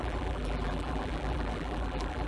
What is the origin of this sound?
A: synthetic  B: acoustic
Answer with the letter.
A